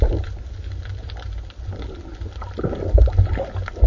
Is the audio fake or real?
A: real